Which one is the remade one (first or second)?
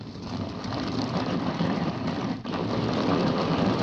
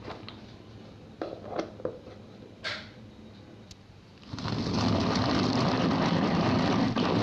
first